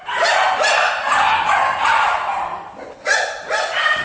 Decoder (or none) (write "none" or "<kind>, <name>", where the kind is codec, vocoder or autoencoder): none